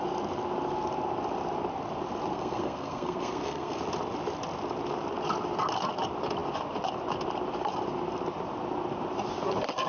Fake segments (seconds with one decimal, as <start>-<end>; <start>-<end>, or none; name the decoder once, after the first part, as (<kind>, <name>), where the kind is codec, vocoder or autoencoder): 2.3-3.8 (codec, SNAC)